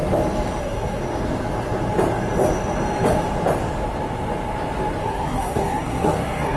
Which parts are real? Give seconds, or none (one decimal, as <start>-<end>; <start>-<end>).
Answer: 0.0-0.6; 1.0-5.0